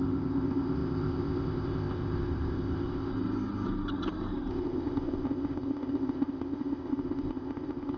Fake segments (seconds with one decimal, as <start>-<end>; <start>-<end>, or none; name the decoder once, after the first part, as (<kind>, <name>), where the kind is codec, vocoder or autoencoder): 0.0-3.1 (codec, ZipCodec); 4.5-8.0